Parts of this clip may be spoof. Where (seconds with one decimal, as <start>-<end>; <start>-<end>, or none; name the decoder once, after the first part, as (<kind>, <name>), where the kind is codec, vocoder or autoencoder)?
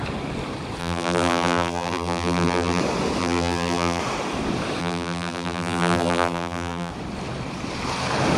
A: 0.8-2.8 (vocoder, BigVGAN v2); 3.2-4.0; 4.8-6.9